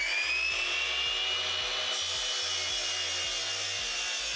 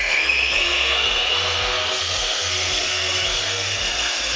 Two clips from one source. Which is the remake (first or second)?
second